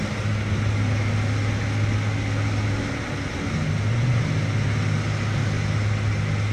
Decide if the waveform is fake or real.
real